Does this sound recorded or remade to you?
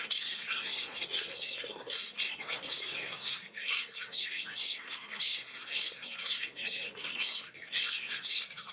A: remade